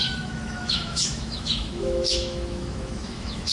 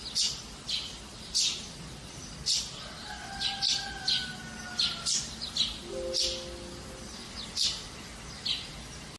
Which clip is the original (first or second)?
second